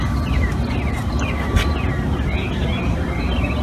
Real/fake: real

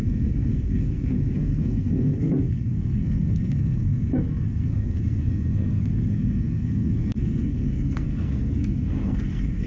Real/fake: fake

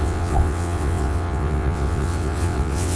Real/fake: fake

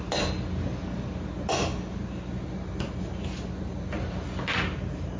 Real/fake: real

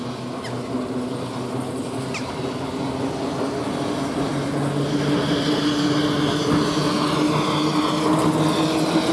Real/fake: real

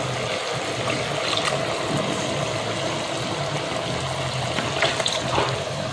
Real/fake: real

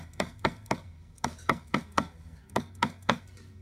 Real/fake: fake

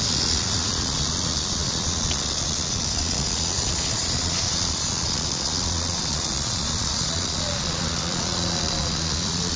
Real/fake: fake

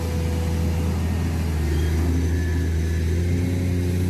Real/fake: real